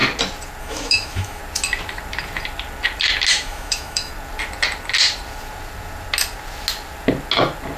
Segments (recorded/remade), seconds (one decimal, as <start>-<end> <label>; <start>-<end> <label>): 0.0-0.6 recorded; 0.6-1.4 remade; 1.4-3.3 recorded; 3.3-4.1 remade; 4.1-7.8 recorded

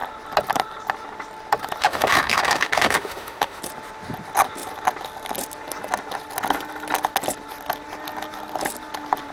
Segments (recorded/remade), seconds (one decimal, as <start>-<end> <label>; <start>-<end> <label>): 0.0-1.8 recorded; 1.8-3.6 remade; 3.6-9.3 recorded

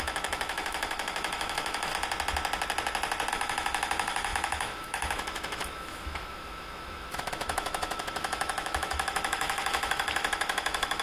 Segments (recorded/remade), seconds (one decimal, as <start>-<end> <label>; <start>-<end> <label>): 0.0-1.9 remade; 1.9-3.3 recorded; 3.3-11.0 remade

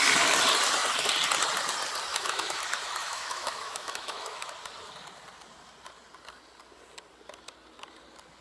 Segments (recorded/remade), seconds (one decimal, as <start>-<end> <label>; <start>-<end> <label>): 0.0-2.1 recorded; 2.1-2.6 remade; 2.6-3.0 recorded; 3.0-4.5 remade; 4.5-8.4 recorded

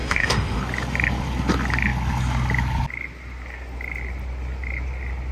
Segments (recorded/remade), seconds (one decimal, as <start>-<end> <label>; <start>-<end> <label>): 0.0-0.6 remade; 0.6-5.3 recorded